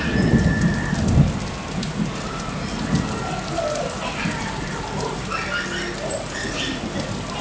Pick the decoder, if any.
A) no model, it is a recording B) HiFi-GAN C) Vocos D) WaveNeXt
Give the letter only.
A